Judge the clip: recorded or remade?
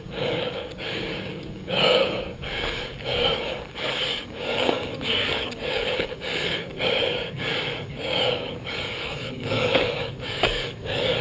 remade